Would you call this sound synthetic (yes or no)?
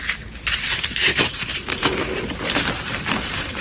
yes